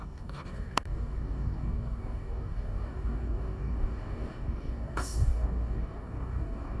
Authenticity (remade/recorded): remade